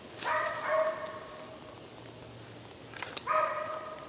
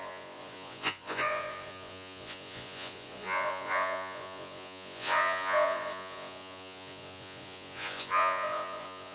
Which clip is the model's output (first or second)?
second